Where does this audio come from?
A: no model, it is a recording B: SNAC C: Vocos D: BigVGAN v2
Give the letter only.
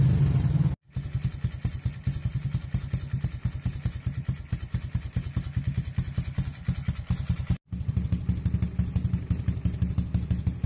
A